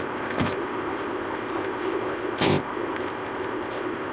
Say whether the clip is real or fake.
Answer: fake